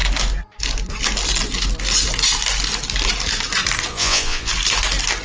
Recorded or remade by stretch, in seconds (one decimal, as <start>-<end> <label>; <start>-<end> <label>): 0.0-3.9 recorded; 3.9-4.5 remade; 4.5-5.2 recorded